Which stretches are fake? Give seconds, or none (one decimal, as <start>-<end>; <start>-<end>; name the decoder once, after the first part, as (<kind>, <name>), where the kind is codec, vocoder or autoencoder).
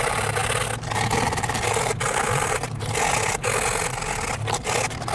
none